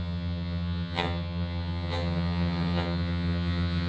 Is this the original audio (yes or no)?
no